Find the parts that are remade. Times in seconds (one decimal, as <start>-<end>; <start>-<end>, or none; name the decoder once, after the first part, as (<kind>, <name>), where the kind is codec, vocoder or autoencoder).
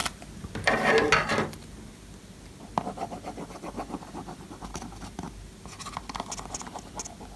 none